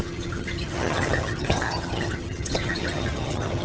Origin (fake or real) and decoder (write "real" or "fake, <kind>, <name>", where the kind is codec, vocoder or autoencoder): fake, vocoder, HiFi-GAN